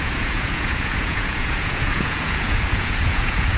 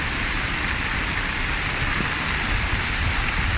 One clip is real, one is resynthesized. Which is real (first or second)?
second